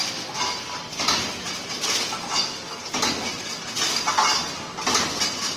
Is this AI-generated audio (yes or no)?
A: no